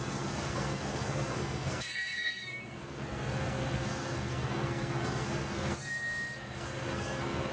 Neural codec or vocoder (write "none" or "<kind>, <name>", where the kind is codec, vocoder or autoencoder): codec, SNAC